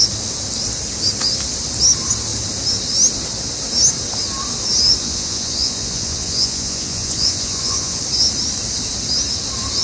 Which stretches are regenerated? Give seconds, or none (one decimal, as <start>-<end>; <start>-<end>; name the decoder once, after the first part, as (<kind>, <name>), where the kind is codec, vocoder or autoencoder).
5.0-8.0 (vocoder, Vocos)